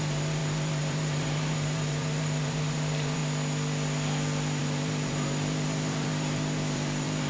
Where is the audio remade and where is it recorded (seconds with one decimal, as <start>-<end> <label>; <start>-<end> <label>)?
0.0-3.2 remade; 3.2-4.6 recorded; 4.6-7.3 remade